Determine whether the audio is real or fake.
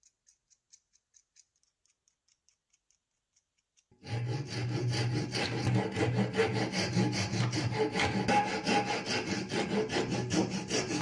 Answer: real